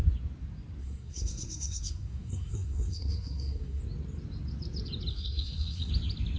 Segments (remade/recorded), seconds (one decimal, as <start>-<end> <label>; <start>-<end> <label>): 0.0-0.8 recorded; 0.8-3.8 remade; 3.8-5.1 recorded; 5.1-5.9 remade; 5.9-6.4 recorded